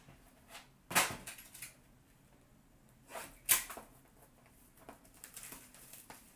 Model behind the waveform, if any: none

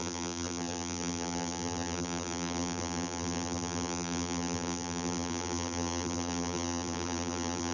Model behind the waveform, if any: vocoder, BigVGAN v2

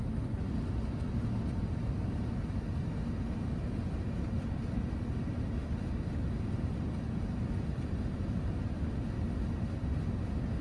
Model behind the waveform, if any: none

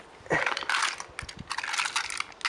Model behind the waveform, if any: none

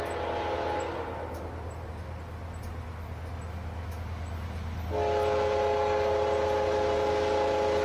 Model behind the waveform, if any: none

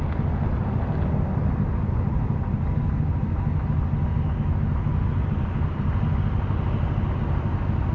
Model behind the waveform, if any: none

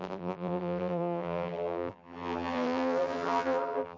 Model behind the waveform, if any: vocoder, BigVGAN v2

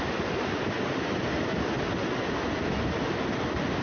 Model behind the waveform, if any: none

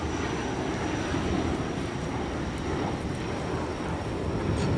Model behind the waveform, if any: none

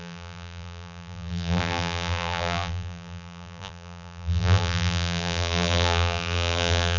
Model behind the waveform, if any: vocoder, BigVGAN v2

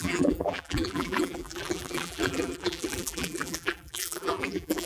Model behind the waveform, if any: vocoder, BigVGAN v2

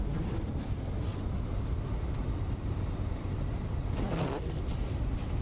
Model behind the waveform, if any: none